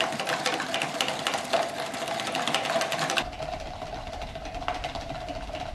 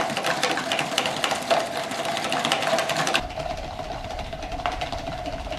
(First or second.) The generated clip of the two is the second